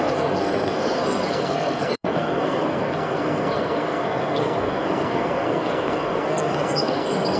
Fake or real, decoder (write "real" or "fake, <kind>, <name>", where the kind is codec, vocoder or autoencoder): fake, codec, SNAC